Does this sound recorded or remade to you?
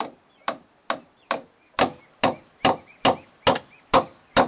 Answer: recorded